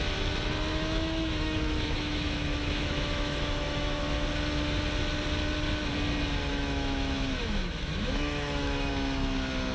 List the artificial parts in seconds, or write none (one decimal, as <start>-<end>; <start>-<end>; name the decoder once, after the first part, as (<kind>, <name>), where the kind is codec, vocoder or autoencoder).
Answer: 0.7-4.0 (autoencoder, DAC-VAE); 6.5-8.9